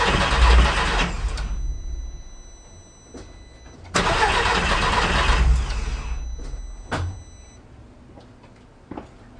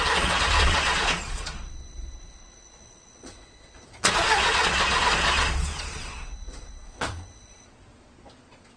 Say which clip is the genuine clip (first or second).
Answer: first